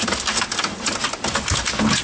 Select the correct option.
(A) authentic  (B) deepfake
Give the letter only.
A